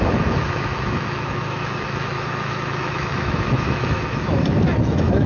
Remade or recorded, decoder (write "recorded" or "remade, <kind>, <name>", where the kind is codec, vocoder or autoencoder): remade, autoencoder, DAC-VAE